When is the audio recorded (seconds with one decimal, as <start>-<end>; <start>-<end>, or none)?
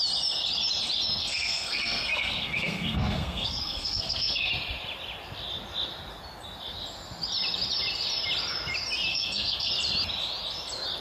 0.0-1.2; 4.5-9.1; 9.7-11.0